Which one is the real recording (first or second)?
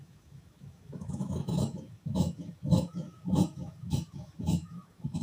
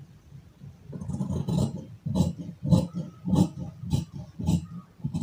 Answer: second